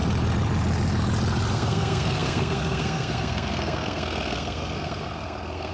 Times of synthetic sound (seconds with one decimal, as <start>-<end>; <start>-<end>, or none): 1.5-5.7